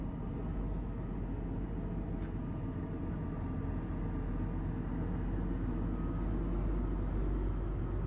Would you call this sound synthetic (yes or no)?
no